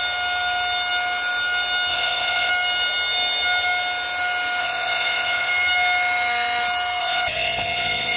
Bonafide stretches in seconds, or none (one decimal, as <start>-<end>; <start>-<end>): 0.0-1.9; 2.5-4.6; 5.5-7.0